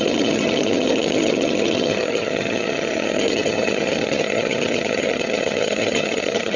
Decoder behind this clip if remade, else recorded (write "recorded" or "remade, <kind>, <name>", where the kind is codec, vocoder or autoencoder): remade, vocoder, HiFi-GAN